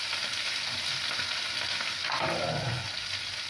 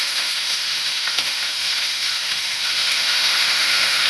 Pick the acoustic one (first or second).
first